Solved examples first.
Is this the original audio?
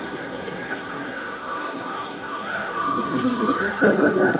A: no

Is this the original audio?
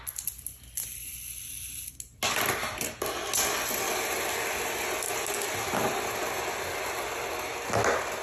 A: yes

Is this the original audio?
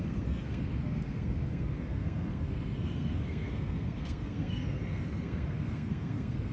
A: no